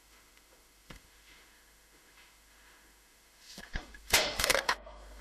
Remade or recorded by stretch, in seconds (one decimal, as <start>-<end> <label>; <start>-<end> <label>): 0.0-5.2 remade